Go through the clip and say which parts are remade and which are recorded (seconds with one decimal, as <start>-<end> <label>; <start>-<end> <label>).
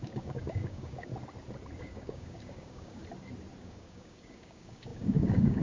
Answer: 0.0-1.1 remade; 1.1-1.8 recorded; 1.8-3.0 remade; 3.0-3.6 recorded; 3.6-5.6 remade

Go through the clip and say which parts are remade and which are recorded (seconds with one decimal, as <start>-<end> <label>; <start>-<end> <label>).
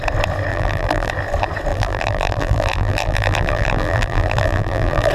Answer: 0.0-0.5 recorded; 0.5-1.1 remade; 1.1-1.7 recorded; 1.7-5.1 remade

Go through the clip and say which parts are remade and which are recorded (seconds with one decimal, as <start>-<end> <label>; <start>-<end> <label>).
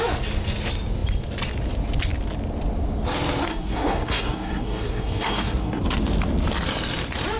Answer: 0.0-3.5 recorded; 3.5-5.8 remade; 5.8-7.4 recorded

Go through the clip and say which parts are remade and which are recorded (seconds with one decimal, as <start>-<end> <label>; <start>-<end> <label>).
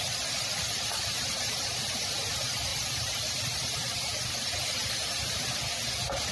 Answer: 0.0-0.6 recorded; 0.6-2.3 remade; 2.3-2.7 recorded; 2.7-5.4 remade; 5.4-6.3 recorded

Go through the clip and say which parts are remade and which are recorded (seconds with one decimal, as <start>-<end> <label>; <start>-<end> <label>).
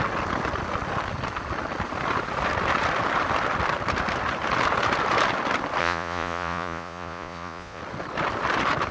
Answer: 0.0-5.8 recorded; 5.8-7.8 remade; 7.8-8.9 recorded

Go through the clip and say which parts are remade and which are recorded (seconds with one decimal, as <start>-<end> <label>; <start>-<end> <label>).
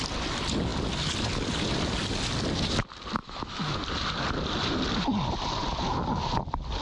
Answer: 0.0-3.2 recorded; 3.2-3.8 remade; 3.8-6.8 recorded